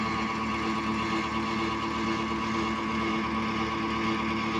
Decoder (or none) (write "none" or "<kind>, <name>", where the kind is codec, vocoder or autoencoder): none